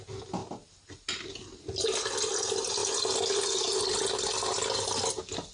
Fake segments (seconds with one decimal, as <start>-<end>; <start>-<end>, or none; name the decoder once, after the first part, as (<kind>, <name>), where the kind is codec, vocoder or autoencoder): none